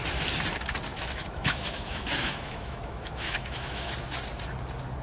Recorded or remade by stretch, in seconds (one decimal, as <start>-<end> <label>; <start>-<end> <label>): 0.0-0.9 recorded; 0.9-3.9 remade; 3.9-5.0 recorded